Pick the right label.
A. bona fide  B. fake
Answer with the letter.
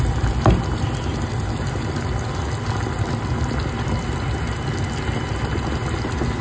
A